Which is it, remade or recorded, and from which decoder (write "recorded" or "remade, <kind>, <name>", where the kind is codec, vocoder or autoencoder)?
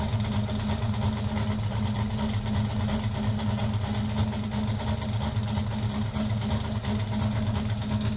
recorded